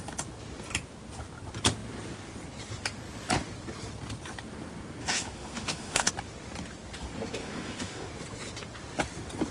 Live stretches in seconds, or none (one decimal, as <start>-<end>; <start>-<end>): 0.0-5.0; 6.1-7.4; 8.1-9.5